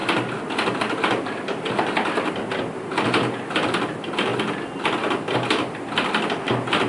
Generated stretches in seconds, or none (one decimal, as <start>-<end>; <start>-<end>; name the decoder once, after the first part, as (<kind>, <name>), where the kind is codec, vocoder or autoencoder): 0.0-2.9 (vocoder, BigVGAN v2); 4.3-6.5

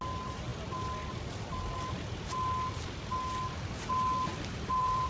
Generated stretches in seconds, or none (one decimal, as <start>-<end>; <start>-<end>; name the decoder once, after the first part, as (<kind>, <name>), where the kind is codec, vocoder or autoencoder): 4.3-5.1 (vocoder, BigVGAN v2)

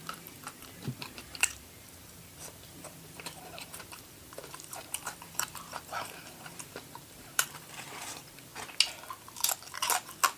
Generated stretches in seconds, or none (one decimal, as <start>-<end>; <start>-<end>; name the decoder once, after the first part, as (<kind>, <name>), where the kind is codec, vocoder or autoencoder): 0.0-8.5 (vocoder, BigVGAN v2)

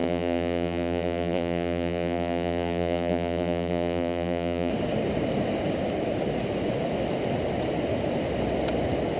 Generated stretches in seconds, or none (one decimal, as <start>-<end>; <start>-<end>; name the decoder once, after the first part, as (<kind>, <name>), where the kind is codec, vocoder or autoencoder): 0.0-4.7 (vocoder, BigVGAN v2)

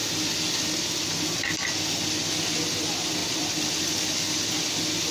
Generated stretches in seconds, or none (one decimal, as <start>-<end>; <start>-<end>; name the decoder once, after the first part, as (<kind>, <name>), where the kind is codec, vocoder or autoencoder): 3.2-3.7 (vocoder, BigVGAN v2)

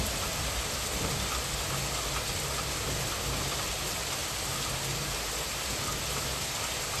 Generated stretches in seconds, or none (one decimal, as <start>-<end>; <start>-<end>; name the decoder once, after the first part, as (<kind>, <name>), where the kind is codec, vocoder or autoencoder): 4.2-5.5 (vocoder, BigVGAN v2)

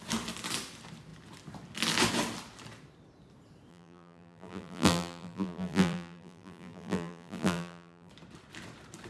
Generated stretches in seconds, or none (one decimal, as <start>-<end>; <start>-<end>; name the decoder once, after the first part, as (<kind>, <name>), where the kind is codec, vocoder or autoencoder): 3.7-8.1 (vocoder, BigVGAN v2)